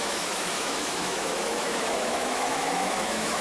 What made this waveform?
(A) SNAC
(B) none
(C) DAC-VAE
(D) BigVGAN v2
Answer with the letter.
C